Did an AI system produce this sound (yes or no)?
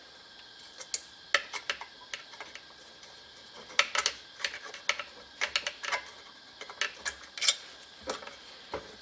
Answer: no